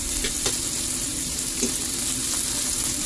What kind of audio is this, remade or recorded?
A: recorded